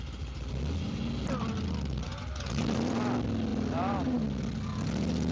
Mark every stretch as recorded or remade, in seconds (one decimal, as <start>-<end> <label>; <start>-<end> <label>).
0.0-5.3 recorded